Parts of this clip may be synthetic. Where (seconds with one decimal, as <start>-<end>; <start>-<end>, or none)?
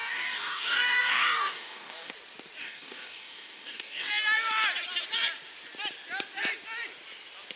0.0-2.1; 2.6-4.1